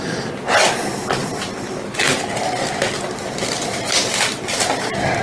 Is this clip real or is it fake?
real